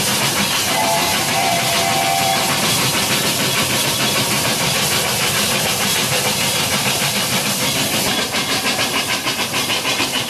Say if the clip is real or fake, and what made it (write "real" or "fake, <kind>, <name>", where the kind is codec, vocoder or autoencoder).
fake, vocoder, BigVGAN v2